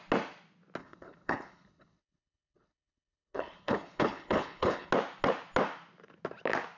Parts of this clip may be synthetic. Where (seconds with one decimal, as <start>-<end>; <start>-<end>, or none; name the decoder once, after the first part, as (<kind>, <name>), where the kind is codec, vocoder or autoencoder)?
0.8-4.9 (codec, HILCodec)